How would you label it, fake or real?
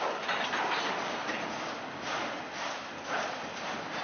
real